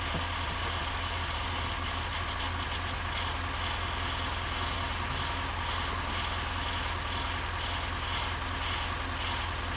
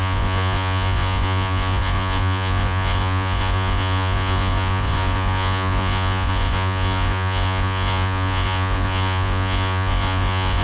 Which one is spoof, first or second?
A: second